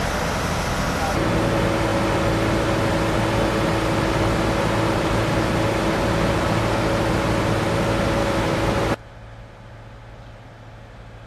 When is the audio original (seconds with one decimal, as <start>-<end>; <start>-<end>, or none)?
0.0-8.2; 8.7-11.3

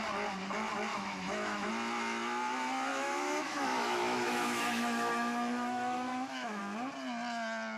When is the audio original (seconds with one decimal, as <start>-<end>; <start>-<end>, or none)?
0.0-0.9; 1.7-2.9; 6.6-7.8

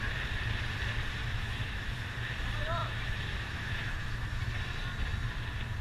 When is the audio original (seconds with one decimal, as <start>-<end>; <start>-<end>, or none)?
0.0-1.2; 1.9-2.8; 4.4-5.8

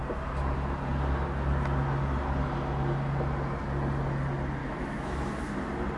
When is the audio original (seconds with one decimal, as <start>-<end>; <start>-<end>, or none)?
0.0-4.6; 5.4-6.0